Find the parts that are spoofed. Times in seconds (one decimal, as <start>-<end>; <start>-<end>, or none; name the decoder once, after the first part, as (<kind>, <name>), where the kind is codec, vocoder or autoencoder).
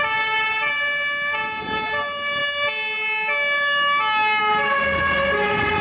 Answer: none